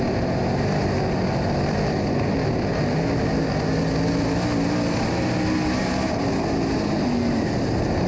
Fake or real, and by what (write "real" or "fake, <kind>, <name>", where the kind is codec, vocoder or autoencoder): real